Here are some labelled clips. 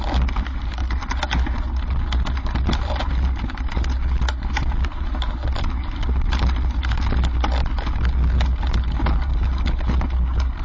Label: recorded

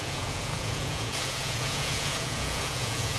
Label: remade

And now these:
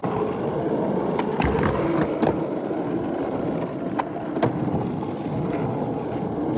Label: recorded